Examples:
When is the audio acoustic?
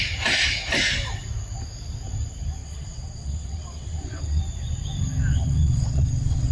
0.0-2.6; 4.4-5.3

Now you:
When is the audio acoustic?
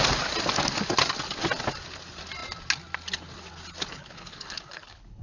0.0-4.0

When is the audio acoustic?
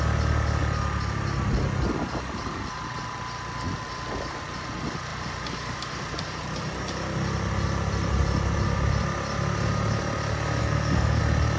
0.0-10.6; 11.2-11.6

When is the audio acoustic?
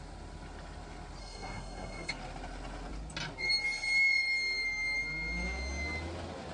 0.0-1.2; 2.1-6.5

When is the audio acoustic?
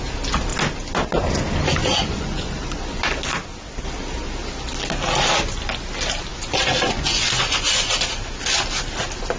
0.0-1.8; 2.8-6.3; 7.9-9.4